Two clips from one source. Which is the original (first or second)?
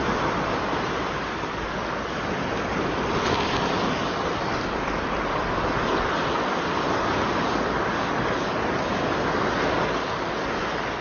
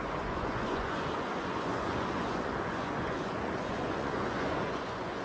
first